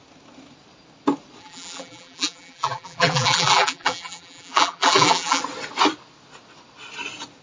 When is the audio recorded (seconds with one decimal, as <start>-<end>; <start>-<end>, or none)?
0.0-1.4; 5.4-7.4